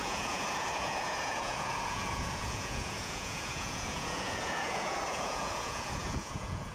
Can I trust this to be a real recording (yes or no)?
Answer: no